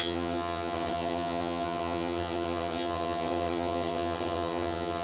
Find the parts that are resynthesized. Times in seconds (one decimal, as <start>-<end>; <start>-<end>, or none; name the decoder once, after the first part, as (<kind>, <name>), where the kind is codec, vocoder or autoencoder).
0.0-5.0 (vocoder, HiFi-GAN)